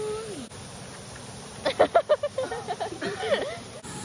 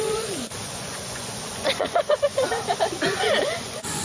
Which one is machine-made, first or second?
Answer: second